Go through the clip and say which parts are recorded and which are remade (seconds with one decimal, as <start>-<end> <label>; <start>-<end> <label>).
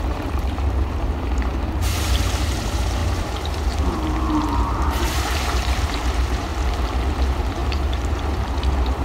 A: 0.0-6.5 remade; 6.5-7.1 recorded; 7.1-9.0 remade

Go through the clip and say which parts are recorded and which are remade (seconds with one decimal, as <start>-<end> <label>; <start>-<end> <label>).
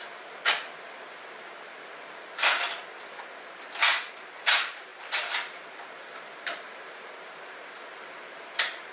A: 0.0-2.8 remade; 2.8-4.2 recorded; 4.2-8.9 remade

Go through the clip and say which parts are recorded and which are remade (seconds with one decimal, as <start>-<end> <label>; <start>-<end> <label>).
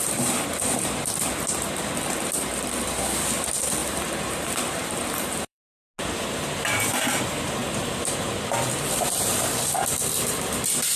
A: 0.0-3.8 recorded; 3.8-5.8 remade; 5.8-11.0 recorded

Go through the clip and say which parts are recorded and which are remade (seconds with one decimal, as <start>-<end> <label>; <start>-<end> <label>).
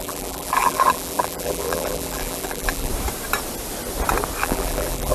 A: 0.0-2.9 remade; 2.9-4.4 recorded; 4.4-5.1 remade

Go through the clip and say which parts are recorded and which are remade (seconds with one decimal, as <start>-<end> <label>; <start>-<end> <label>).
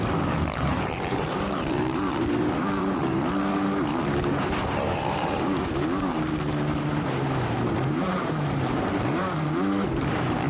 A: 0.0-0.7 recorded; 0.7-3.3 remade; 3.3-4.6 recorded; 4.6-9.0 remade; 9.0-10.5 recorded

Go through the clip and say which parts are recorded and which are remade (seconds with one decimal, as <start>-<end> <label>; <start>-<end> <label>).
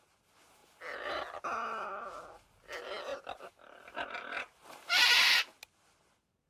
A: 0.0-6.5 recorded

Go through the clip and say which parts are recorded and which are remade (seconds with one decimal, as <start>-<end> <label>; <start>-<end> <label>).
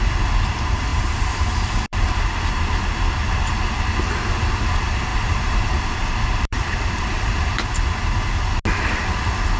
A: 0.0-0.9 recorded; 0.9-2.3 remade; 2.3-5.1 recorded; 5.1-7.7 remade; 7.7-9.6 recorded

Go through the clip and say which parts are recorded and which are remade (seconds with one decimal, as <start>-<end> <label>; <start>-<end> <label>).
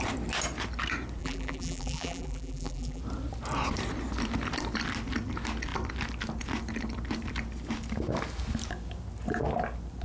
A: 0.0-1.2 recorded; 1.2-3.0 remade; 3.0-10.0 recorded